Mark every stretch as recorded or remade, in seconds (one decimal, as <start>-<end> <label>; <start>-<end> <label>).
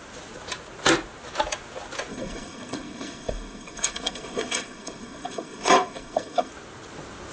0.0-2.1 recorded; 2.1-6.5 remade; 6.5-7.3 recorded